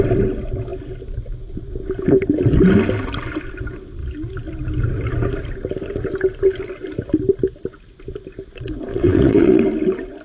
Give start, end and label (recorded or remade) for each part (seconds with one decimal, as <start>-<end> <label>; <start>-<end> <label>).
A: 0.0-8.9 recorded; 8.9-9.6 remade; 9.6-10.2 recorded